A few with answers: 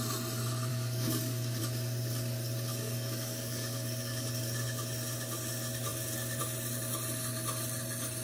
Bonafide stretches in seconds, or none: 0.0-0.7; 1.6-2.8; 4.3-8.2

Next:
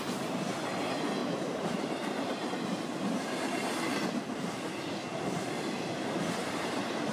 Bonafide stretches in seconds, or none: 0.0-1.2; 2.5-6.4

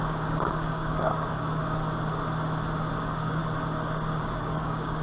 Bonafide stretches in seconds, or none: 1.6-3.0; 3.4-4.2

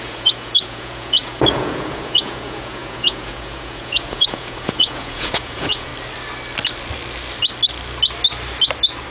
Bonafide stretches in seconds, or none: 5.9-9.1